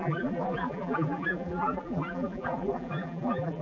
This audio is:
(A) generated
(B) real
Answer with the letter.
A